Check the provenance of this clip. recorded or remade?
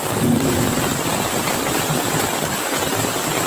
recorded